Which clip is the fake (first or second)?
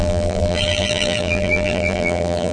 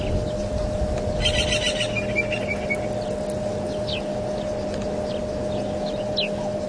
first